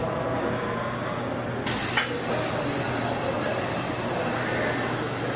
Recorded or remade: recorded